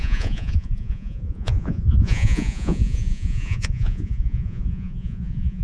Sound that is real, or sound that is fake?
fake